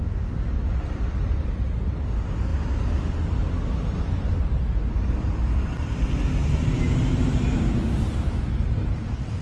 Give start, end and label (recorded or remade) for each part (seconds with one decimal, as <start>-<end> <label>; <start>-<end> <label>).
0.0-9.4 recorded